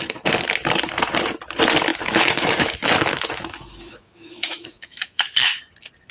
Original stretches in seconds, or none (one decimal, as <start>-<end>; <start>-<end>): 0.0-1.9; 5.6-6.1